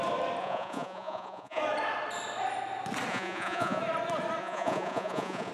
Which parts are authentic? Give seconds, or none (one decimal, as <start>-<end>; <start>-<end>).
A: 0.0-0.4; 1.6-3.1; 3.8-4.4